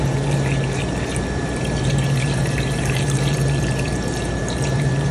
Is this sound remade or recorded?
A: remade